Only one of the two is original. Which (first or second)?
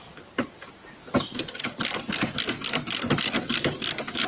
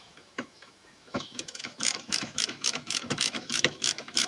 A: first